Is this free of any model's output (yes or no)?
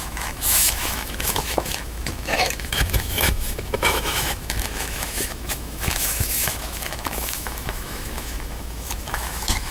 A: no